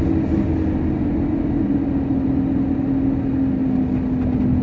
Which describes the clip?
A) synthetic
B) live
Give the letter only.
B